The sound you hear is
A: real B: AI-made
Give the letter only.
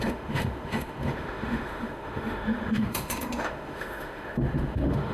B